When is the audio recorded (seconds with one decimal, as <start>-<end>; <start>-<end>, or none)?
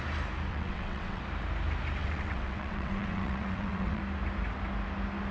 0.0-0.5; 1.2-2.0; 4.0-5.3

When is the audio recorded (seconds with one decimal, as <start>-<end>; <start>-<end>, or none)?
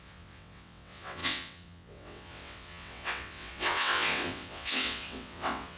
none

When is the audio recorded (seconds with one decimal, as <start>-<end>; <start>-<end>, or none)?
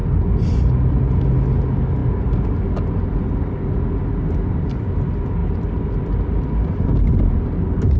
0.0-8.0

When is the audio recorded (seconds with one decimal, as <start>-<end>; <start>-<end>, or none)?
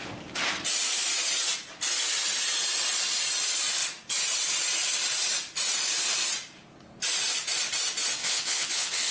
0.0-8.2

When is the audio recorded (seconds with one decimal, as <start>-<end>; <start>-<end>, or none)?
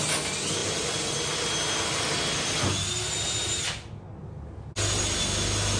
0.0-5.8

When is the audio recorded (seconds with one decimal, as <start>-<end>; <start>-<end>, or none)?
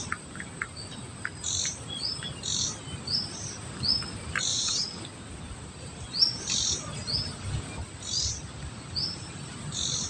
0.0-4.5; 5.0-10.1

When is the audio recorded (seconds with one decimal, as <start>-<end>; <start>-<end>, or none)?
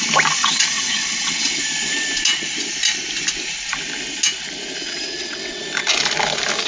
0.0-0.4; 1.6-4.8; 5.6-6.7